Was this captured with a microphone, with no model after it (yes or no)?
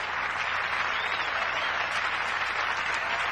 yes